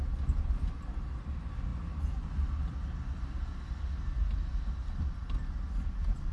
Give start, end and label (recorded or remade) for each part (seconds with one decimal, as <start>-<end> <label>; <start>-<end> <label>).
0.0-6.3 recorded

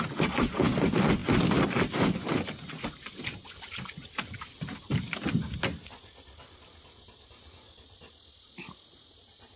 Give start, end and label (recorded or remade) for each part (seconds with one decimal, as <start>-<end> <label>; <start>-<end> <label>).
0.0-9.6 recorded

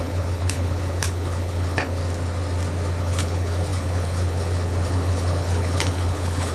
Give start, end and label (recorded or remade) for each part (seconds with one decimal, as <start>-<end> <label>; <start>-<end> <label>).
0.0-2.0 remade; 2.0-3.0 recorded; 3.0-6.5 remade

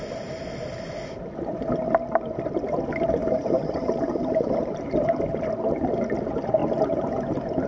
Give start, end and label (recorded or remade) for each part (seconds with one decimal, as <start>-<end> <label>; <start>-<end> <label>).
0.0-3.2 recorded; 3.2-5.9 remade; 5.9-7.7 recorded

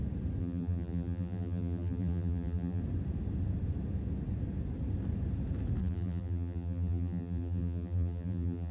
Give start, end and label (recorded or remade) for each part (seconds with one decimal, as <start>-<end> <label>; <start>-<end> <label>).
0.0-0.4 recorded; 0.4-2.8 remade; 2.8-5.8 recorded; 5.8-8.7 remade